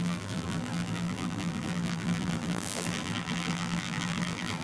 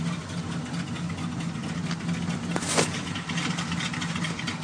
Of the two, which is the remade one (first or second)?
first